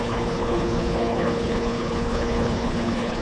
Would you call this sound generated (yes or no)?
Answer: yes